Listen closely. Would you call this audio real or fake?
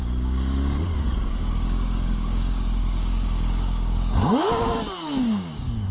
fake